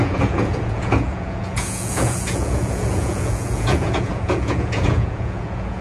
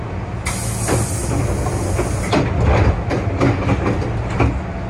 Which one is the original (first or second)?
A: second